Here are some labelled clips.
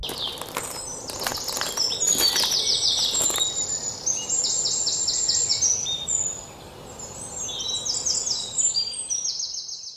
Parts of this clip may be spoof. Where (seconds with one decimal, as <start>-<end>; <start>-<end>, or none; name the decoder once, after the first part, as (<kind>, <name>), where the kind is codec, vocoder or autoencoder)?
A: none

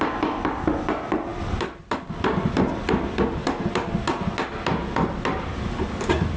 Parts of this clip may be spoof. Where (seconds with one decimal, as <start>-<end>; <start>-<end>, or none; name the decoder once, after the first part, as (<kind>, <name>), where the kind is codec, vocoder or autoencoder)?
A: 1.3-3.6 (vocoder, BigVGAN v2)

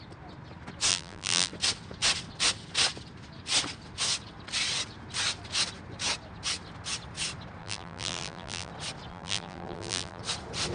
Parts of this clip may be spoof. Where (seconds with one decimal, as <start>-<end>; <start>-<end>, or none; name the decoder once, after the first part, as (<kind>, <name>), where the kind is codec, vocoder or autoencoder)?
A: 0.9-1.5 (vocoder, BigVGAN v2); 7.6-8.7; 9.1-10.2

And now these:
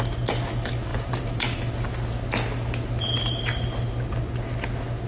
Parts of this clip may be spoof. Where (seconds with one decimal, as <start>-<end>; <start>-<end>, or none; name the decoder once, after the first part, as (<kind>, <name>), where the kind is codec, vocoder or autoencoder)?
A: 0.9-1.6 (vocoder, BigVGAN v2)